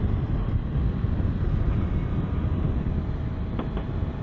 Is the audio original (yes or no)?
yes